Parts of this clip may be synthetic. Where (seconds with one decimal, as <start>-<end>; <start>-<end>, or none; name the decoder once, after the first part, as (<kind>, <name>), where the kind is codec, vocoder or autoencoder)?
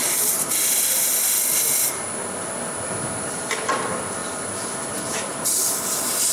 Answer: 0.0-1.2 (vocoder, BigVGAN v2)